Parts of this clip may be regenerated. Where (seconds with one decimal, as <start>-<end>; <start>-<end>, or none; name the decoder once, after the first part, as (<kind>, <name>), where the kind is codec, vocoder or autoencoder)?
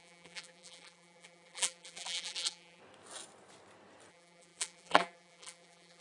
0.0-2.8 (vocoder, BigVGAN v2); 4.1-6.0